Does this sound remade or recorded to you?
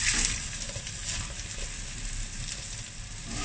recorded